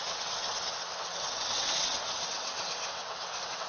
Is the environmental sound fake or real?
fake